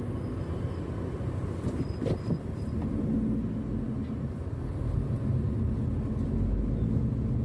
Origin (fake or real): real